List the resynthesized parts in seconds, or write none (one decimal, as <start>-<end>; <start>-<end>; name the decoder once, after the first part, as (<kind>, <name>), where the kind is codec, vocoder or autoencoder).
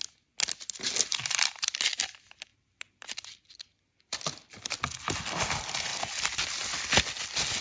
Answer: 1.1-1.7 (vocoder, BigVGAN v2); 5.9-6.6